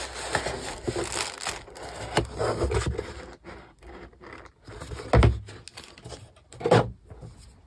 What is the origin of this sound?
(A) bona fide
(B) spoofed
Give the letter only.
A